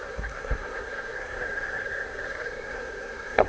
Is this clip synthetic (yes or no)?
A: yes